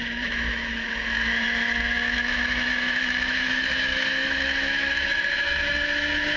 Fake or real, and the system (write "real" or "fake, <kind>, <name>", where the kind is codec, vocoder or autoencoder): fake, autoencoder, DAC-VAE